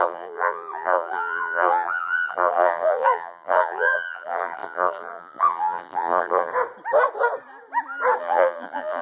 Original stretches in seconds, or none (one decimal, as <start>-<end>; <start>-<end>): 6.5-8.2